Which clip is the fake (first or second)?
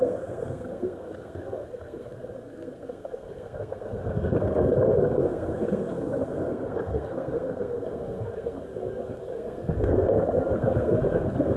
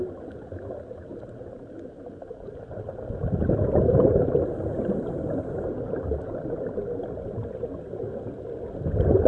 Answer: first